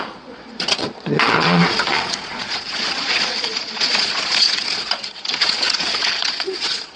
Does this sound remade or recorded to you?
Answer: remade